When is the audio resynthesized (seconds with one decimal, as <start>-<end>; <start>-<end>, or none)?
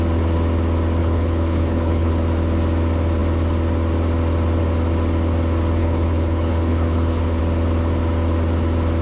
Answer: 1.0-2.1; 5.8-7.4